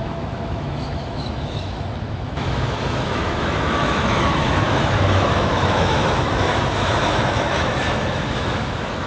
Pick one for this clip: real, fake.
fake